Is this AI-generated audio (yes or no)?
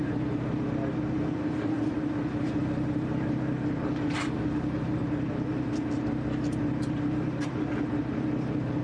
no